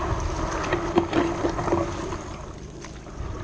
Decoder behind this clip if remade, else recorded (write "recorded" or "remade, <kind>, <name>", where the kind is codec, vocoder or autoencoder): recorded